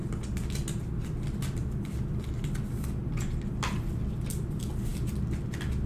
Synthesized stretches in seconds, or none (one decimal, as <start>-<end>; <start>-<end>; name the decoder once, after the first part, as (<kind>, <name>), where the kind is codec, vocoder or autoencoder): none